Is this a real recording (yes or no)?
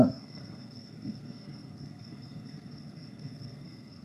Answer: no